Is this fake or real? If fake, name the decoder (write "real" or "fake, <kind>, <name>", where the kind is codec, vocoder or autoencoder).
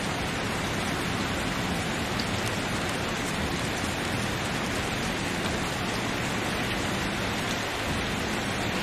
real